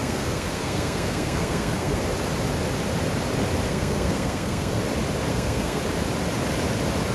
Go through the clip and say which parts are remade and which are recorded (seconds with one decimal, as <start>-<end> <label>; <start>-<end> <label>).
0.0-2.0 remade; 2.0-3.7 recorded; 3.7-4.8 remade; 4.8-5.3 recorded; 5.3-5.8 remade; 5.8-7.1 recorded